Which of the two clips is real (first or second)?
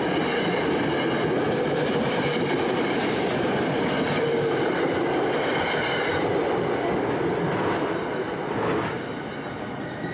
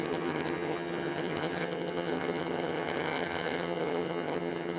first